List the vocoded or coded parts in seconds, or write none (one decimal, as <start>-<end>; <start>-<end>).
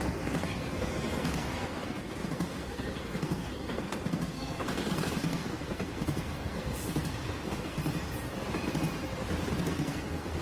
0.0-7.8; 9.6-10.4